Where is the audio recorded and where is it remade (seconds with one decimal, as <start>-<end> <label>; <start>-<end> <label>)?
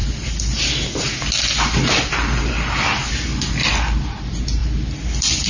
0.0-5.5 recorded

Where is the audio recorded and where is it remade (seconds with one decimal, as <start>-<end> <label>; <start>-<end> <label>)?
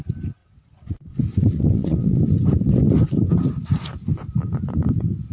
0.0-0.4 recorded; 0.4-2.2 remade; 2.2-5.3 recorded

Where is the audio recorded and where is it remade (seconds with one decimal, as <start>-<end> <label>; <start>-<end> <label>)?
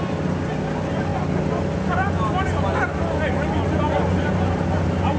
0.0-5.2 recorded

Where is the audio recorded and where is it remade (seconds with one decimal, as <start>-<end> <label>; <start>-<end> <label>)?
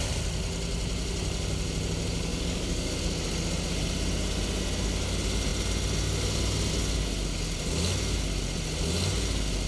0.0-2.3 recorded; 2.3-3.0 remade; 3.0-9.7 recorded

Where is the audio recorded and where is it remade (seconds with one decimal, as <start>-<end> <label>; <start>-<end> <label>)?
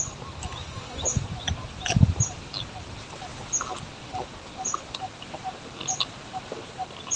0.0-0.6 recorded; 0.6-1.5 remade; 1.5-7.2 recorded